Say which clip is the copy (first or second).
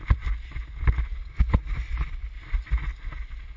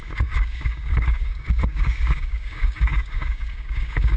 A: second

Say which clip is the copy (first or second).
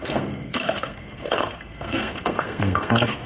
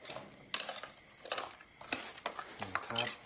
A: first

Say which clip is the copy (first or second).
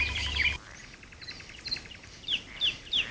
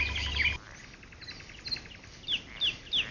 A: first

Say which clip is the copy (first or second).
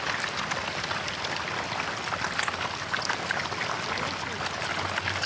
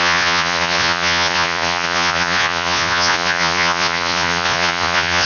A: second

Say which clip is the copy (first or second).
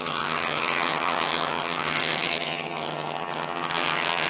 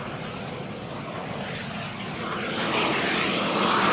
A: first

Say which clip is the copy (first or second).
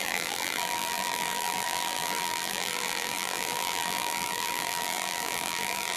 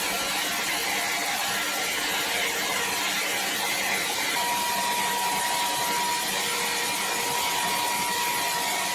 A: first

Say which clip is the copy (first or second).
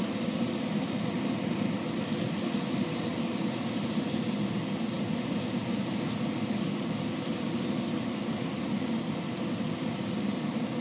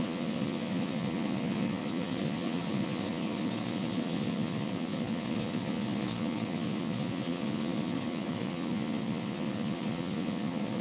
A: second